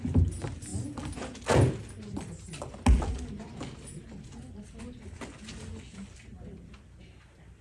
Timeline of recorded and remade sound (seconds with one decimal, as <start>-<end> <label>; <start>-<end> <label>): 0.0-7.6 recorded